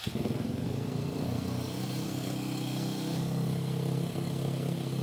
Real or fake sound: fake